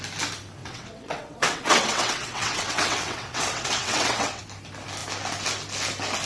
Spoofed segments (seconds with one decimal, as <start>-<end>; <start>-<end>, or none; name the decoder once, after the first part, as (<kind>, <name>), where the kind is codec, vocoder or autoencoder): 0.6-4.4 (vocoder, WaveNeXt)

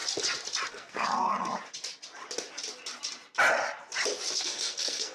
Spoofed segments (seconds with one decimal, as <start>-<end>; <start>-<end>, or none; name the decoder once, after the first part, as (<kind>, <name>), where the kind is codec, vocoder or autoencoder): 0.7-1.3 (codec, SNAC); 4.4-5.1